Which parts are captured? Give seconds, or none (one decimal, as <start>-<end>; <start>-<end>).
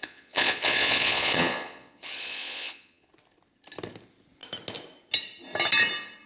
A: 3.1-6.3